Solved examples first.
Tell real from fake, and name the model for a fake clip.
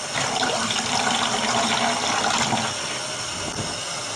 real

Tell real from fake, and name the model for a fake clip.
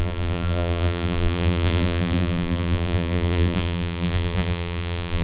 fake, vocoder, BigVGAN v2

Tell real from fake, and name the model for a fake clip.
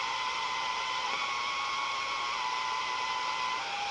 fake, vocoder, BigVGAN v2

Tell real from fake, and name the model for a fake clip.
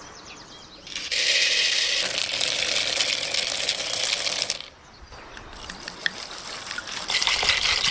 fake, vocoder, BigVGAN v2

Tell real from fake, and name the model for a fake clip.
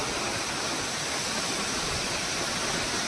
real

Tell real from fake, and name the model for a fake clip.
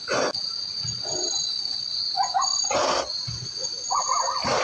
real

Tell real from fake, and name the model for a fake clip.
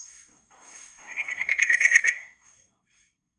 fake, codec, SNAC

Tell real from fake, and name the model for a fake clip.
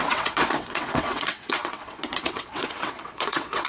fake, vocoder, WaveNeXt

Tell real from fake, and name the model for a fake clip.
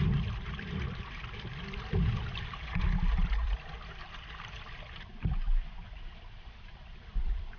fake, vocoder, BigVGAN v2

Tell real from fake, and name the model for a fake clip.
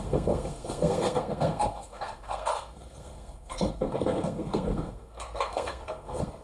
fake, codec, SNAC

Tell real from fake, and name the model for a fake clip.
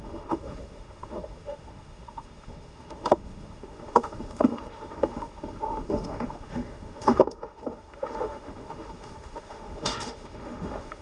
fake, autoencoder, DAC-VAE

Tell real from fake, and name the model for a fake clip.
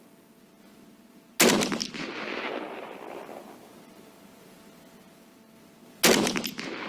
real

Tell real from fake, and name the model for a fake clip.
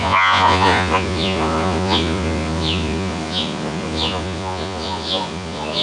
fake, vocoder, Vocos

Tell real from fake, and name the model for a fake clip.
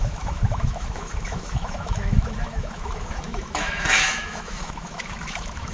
fake, autoencoder, DAC-VAE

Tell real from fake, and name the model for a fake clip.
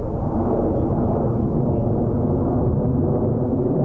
real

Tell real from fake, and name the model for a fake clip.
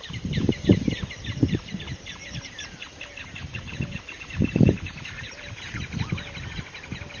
fake, vocoder, BigVGAN v2